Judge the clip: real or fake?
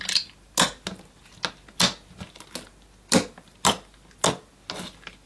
real